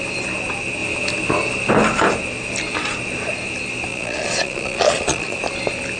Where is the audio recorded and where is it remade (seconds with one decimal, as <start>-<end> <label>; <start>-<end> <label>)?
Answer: 0.0-3.9 recorded; 3.9-5.4 remade; 5.4-6.0 recorded